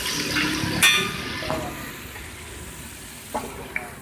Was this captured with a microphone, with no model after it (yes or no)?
yes